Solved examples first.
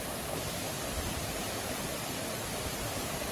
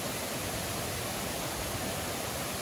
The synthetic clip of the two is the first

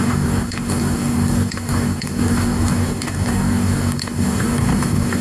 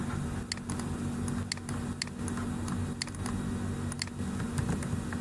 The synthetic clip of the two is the first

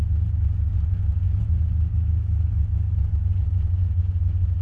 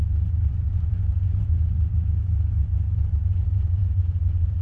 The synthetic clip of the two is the second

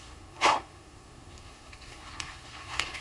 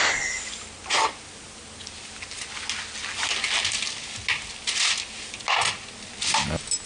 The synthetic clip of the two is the first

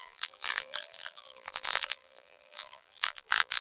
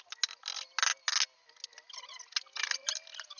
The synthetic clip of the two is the first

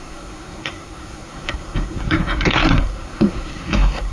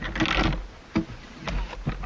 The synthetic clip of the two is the first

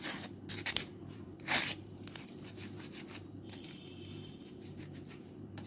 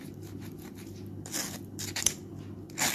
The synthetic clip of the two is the first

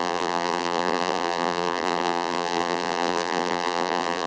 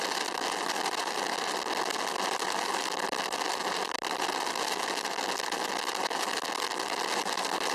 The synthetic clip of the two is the first